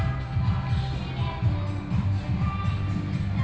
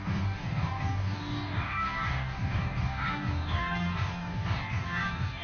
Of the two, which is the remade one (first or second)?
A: second